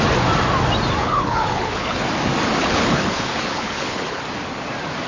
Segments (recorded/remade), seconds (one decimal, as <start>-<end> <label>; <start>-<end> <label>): 0.0-1.0 recorded; 1.0-2.0 remade; 2.0-2.6 recorded; 2.6-4.2 remade; 4.2-5.1 recorded